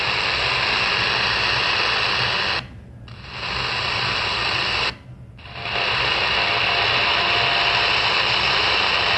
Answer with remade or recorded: recorded